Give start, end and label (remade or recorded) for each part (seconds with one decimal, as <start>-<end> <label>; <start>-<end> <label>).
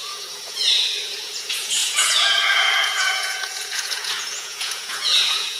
0.0-5.6 remade